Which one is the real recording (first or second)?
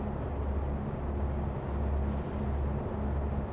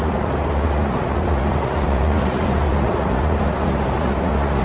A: first